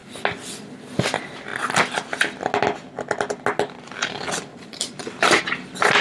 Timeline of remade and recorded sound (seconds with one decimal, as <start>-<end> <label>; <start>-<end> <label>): 0.0-4.5 recorded; 4.5-5.4 remade; 5.4-6.0 recorded